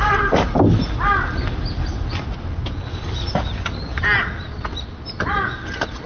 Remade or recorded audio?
recorded